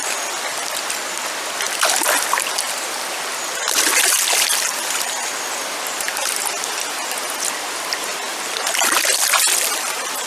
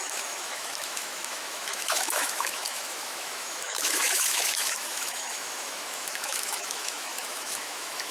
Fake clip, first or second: second